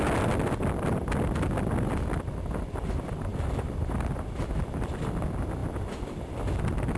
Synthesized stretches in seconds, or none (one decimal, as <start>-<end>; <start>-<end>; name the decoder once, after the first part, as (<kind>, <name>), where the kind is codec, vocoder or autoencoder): 3.3-4.1 (vocoder, BigVGAN v2); 5.6-6.4